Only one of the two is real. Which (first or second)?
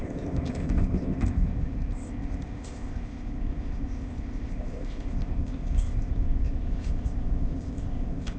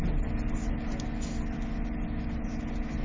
second